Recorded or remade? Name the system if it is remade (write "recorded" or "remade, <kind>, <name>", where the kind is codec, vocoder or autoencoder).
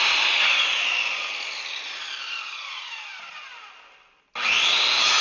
recorded